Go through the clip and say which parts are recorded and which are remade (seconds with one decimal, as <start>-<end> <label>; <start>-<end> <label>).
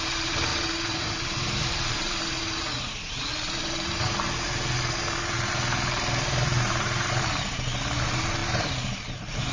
0.0-9.5 remade